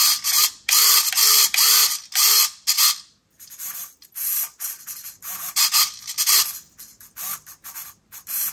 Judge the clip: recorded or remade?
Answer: recorded